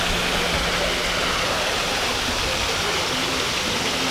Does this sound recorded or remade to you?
recorded